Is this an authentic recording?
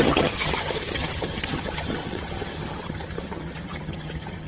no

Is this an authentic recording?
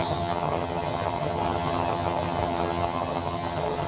no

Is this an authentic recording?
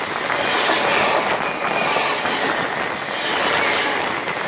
yes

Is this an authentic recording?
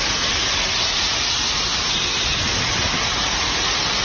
yes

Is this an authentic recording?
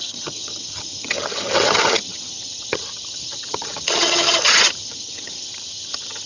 no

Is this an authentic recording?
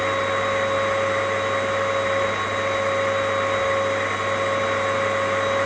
yes